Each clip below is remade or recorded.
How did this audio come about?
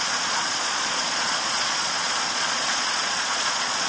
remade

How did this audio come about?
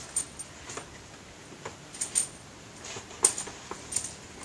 recorded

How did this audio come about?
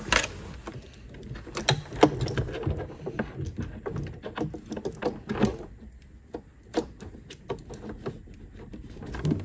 recorded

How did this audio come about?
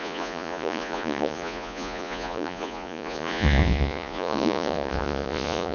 remade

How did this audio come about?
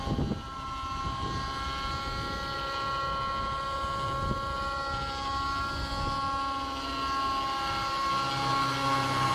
recorded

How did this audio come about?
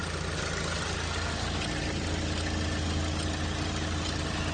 recorded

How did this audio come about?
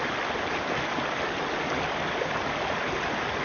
recorded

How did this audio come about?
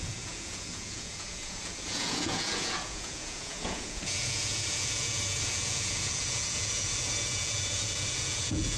remade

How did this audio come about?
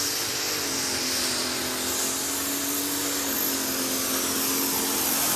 recorded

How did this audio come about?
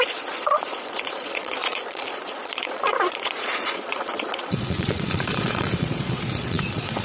remade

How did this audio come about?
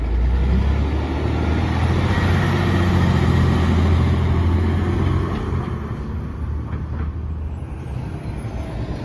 recorded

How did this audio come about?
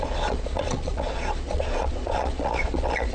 remade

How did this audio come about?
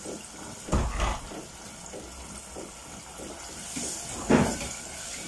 recorded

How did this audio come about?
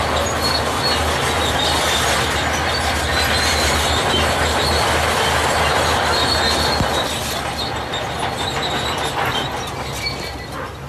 recorded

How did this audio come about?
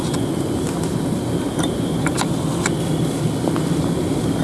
recorded